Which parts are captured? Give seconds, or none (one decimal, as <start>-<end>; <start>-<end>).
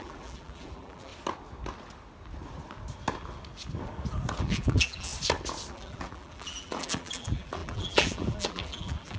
1.1-4.4; 5.1-5.7